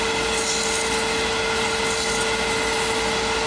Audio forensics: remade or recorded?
recorded